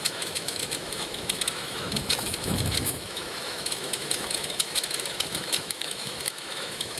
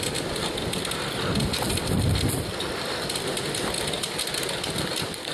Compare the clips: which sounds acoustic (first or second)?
second